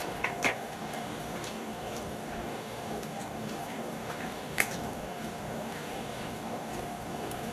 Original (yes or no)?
no